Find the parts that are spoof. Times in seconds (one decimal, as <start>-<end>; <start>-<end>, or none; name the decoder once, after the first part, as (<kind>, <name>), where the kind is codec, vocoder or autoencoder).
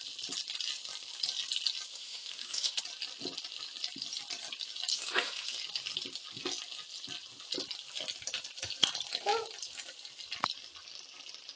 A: 1.9-2.8 (autoencoder, DAC-VAE); 4.9-5.6